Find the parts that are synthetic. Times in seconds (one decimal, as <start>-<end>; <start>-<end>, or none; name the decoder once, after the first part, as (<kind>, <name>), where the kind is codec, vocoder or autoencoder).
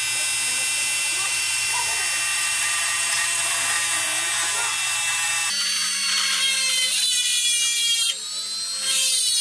1.1-1.8 (vocoder, BigVGAN v2); 2.3-3.4; 4.7-5.3